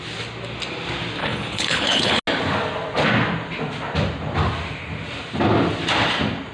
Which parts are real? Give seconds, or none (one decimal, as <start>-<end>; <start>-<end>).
0.0-1.2; 2.2-6.5